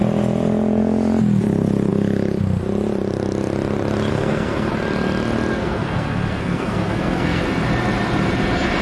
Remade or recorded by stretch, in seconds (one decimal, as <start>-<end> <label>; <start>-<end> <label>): 0.0-4.1 recorded; 4.1-4.7 remade; 4.7-5.5 recorded; 5.5-7.4 remade; 7.4-8.8 recorded